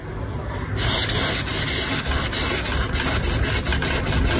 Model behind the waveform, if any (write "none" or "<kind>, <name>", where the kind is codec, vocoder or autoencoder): none